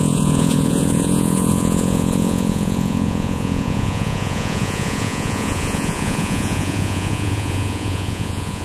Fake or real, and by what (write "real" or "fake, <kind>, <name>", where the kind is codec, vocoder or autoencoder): fake, vocoder, Vocos